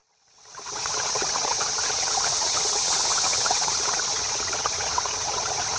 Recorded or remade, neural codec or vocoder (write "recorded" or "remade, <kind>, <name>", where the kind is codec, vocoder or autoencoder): remade, vocoder, WaveNeXt